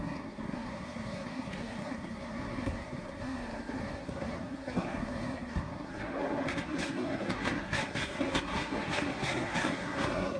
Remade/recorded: remade